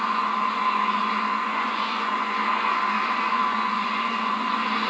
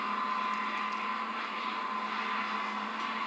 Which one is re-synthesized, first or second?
first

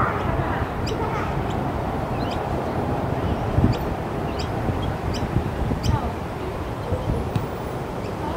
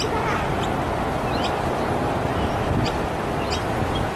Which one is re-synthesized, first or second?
first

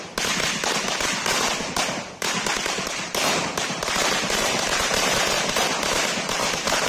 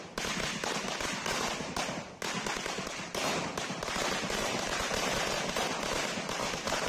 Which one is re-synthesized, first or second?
first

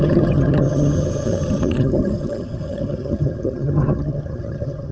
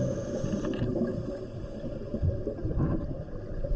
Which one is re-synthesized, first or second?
first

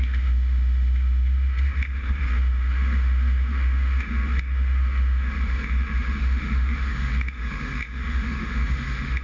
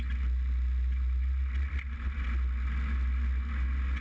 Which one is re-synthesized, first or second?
first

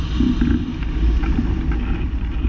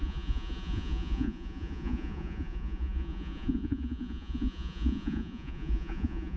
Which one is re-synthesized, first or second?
second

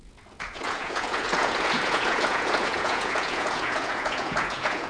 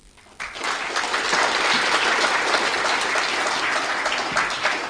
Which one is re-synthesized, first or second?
first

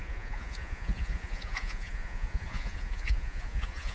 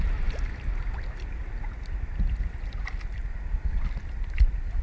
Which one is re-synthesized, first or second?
first